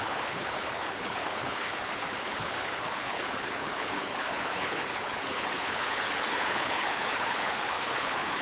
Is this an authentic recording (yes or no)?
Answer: no